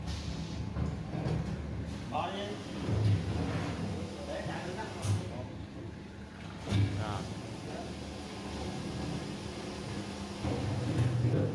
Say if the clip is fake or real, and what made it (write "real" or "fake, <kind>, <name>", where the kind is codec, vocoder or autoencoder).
real